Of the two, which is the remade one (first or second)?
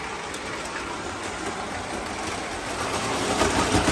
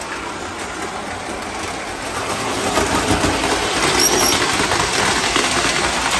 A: first